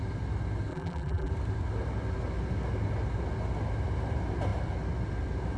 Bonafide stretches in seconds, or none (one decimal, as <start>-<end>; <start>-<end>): 0.0-0.7; 1.3-5.6